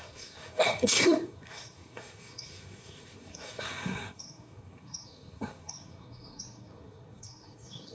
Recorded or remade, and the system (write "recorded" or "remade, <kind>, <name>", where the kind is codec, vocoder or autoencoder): remade, codec, SNAC